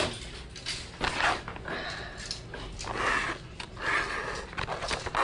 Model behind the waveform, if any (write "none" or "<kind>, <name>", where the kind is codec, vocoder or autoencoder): none